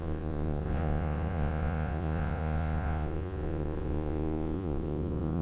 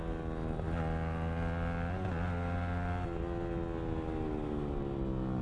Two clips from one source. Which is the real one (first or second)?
second